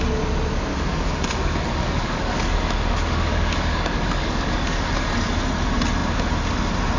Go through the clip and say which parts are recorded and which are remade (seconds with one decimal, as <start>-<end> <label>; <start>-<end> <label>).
0.0-0.7 recorded; 0.7-4.9 remade; 4.9-7.0 recorded